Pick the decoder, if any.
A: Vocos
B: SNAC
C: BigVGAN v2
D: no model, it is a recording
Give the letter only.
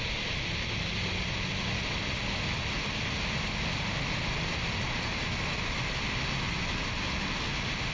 D